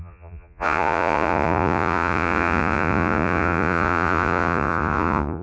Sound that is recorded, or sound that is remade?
remade